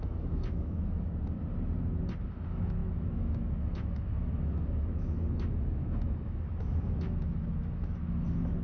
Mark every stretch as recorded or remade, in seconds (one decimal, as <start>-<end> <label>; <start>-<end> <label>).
0.0-1.1 remade; 1.1-2.3 recorded; 2.3-8.6 remade